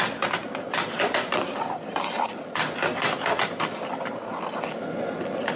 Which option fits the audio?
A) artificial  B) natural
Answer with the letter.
B